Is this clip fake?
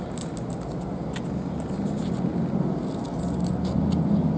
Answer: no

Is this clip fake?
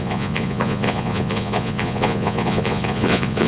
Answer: yes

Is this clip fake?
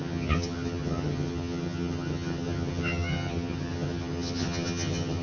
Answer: yes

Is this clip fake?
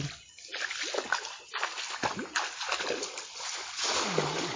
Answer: no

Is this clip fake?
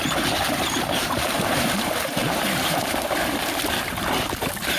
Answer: yes